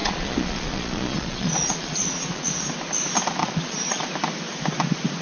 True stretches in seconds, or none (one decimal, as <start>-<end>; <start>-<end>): 2.5-3.4; 4.0-5.2